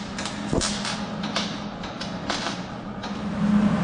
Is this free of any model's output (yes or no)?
yes